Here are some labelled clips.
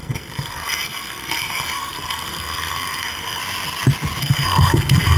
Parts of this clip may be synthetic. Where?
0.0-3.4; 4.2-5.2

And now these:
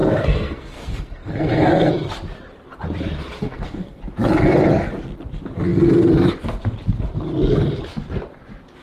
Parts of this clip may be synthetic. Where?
0.0-1.9; 3.4-4.0

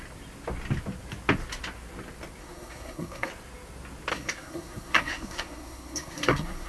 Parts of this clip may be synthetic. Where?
2.4-3.3; 4.1-6.7

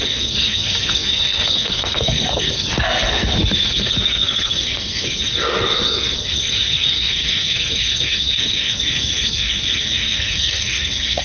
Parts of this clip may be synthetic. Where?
0.0-11.2

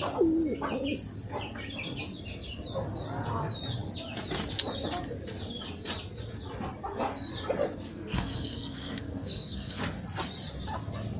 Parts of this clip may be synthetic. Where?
7.9-9.8